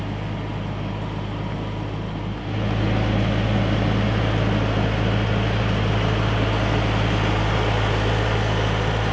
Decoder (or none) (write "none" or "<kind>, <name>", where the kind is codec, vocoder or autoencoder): none